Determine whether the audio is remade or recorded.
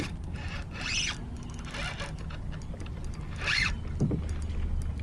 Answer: recorded